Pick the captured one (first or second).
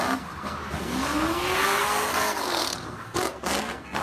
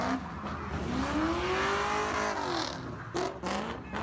second